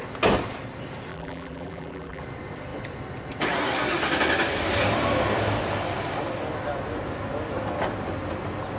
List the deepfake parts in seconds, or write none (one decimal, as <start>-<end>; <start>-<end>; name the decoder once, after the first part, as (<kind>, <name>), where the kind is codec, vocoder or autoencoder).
1.1-2.2 (vocoder, BigVGAN v2)